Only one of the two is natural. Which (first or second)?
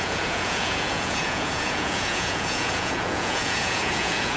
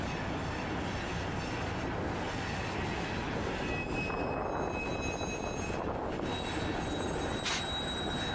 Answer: second